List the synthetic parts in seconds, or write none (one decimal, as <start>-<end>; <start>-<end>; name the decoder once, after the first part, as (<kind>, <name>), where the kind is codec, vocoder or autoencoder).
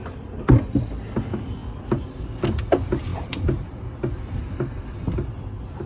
none